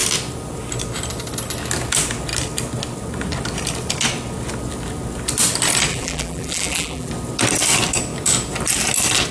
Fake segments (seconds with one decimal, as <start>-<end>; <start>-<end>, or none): 5.9-7.1